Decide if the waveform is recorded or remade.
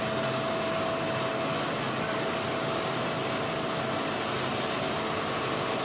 recorded